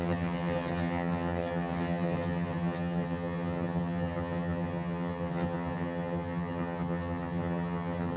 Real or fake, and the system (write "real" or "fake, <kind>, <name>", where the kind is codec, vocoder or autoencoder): fake, vocoder, HiFi-GAN